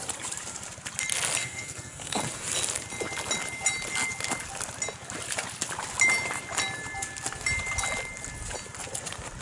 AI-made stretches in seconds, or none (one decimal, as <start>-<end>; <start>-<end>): 1.4-2.2